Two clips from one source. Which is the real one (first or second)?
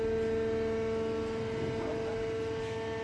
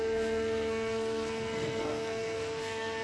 first